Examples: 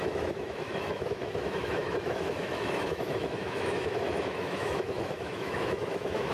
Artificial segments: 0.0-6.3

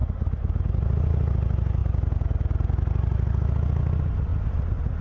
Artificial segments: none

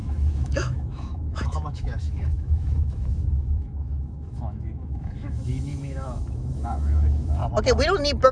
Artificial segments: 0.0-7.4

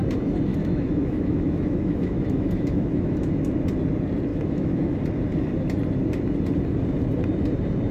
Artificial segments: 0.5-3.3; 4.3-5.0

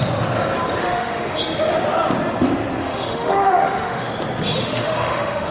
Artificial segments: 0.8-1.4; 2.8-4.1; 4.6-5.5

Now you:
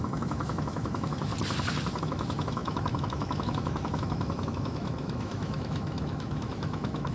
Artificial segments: 0.0-1.3; 2.0-7.1

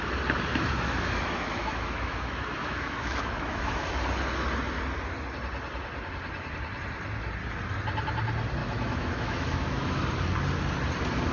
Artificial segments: 0.5-3.9; 8.6-10.0